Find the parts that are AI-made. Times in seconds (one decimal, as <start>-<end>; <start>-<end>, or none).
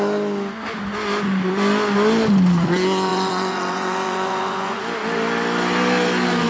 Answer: 3.1-4.8